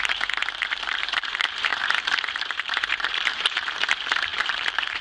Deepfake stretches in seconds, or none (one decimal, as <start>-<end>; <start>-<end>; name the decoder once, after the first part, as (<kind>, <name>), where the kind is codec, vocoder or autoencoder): 0.0-0.4 (vocoder, BigVGAN v2); 1.0-5.0